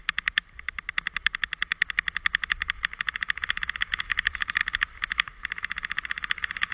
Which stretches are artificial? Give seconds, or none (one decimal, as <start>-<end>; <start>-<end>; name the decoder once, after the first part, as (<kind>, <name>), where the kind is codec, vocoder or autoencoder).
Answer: 0.0-0.4 (vocoder, BigVGAN v2); 2.5-4.6; 5.4-6.7